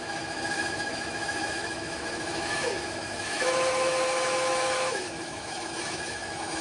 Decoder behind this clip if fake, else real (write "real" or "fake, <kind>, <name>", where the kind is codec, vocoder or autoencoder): fake, autoencoder, DAC-VAE